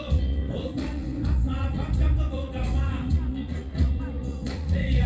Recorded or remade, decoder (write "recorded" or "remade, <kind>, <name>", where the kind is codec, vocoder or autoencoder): remade, vocoder, Vocos